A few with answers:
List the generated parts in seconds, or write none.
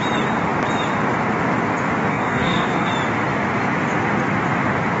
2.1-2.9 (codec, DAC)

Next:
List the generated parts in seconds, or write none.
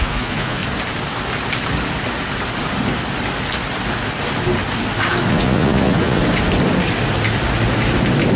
0.0-0.6 (vocoder, Vocos); 5.3-6.2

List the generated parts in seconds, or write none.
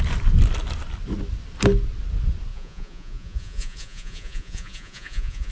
2.5-5.5 (vocoder, Vocos)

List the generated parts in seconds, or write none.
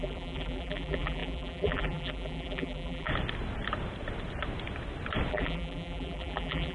0.0-3.1 (vocoder, BigVGAN v2); 5.3-6.7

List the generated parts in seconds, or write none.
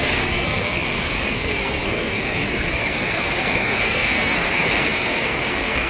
0.0-5.9 (codec, SNAC)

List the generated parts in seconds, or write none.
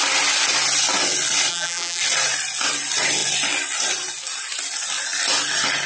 1.5-2.0 (vocoder, BigVGAN v2)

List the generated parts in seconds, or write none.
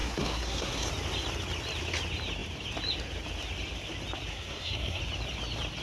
0.0-0.9 (codec, SNAC); 4.3-5.0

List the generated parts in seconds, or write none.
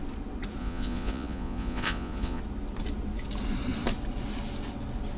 0.6-2.4 (vocoder, Vocos)